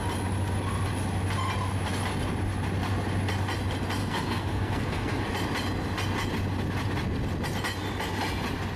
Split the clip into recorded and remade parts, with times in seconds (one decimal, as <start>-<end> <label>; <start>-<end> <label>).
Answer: 0.0-4.0 recorded; 4.0-5.3 remade; 5.3-8.8 recorded